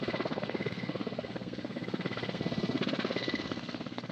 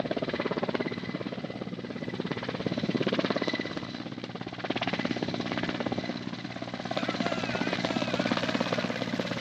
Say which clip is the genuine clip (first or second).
second